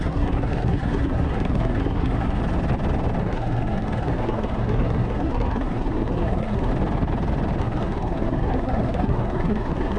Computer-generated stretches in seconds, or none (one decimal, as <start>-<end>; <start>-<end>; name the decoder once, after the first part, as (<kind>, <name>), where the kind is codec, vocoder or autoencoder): 0.0-2.4 (codec, SNAC); 3.2-6.7; 7.6-10.0